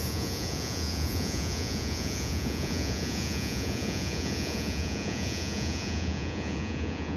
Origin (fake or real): fake